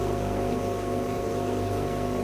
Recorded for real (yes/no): no